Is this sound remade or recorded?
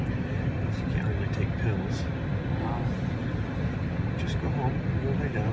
recorded